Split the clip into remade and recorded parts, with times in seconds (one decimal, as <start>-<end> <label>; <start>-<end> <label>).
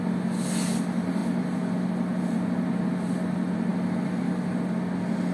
0.0-5.3 recorded